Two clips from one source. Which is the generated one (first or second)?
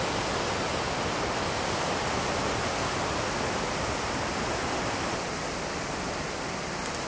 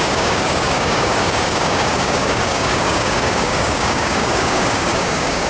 second